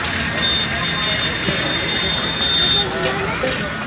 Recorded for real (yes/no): yes